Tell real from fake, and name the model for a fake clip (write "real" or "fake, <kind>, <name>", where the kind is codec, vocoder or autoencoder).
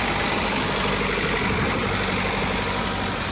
real